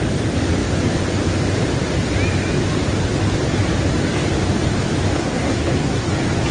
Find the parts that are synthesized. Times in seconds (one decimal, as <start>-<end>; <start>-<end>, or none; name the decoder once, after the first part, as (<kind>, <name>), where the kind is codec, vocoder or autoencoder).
5.2-6.1 (codec, SNAC)